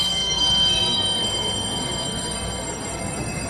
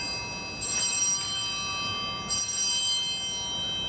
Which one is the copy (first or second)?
first